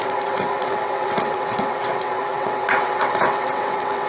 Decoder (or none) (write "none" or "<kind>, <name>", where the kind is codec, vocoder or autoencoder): vocoder, WaveNeXt